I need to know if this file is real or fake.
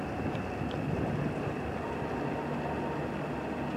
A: real